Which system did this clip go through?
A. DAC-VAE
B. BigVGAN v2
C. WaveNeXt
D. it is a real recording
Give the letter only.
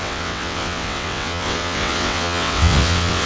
C